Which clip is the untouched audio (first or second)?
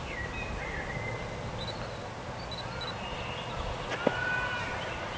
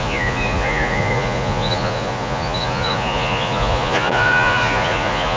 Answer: first